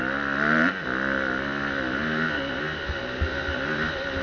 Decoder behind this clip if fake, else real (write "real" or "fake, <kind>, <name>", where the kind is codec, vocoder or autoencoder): real